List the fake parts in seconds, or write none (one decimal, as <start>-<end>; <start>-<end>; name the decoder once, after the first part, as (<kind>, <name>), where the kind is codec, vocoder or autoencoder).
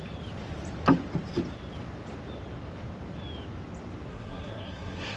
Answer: 4.1-5.2 (codec, SNAC)